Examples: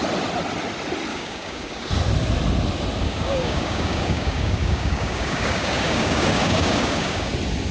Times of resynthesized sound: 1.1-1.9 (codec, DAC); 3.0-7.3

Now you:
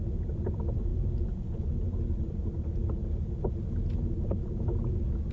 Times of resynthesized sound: none

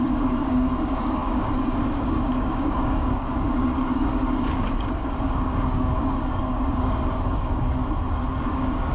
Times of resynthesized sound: 0.0-7.8 (codec, DAC); 8.5-8.9

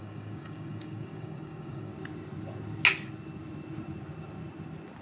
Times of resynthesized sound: 0.0-1.9 (codec, DAC)